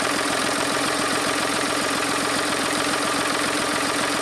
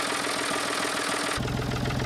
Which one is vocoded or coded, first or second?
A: first